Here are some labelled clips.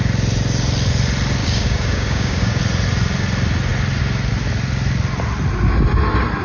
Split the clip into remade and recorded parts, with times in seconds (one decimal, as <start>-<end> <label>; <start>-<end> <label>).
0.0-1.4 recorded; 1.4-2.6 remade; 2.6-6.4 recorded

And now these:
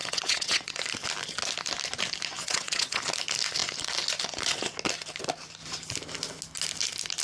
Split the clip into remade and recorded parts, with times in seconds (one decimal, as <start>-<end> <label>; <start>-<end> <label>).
0.0-0.8 remade; 0.8-2.4 recorded; 2.4-3.0 remade; 3.0-7.2 recorded

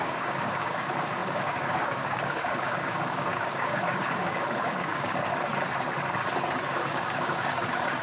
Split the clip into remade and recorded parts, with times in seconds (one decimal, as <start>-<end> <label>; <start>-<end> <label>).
0.0-5.3 remade; 5.3-6.9 recorded; 6.9-8.0 remade